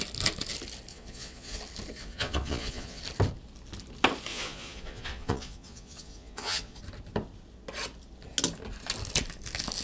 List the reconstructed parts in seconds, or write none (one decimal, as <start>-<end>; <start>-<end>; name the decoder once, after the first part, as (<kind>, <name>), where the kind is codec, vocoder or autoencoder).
0.9-1.6 (vocoder, Vocos); 2.0-3.0; 4.3-6.8